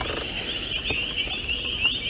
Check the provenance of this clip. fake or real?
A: real